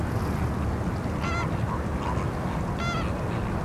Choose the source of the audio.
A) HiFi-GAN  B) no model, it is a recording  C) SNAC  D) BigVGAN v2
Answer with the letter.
B